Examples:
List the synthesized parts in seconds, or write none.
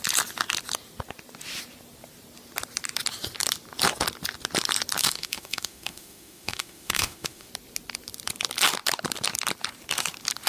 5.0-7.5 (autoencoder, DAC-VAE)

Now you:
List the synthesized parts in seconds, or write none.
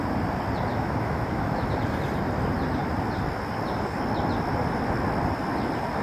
0.7-1.7 (autoencoder, DAC-VAE)